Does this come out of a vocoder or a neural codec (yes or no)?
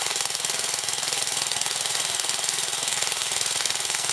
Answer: yes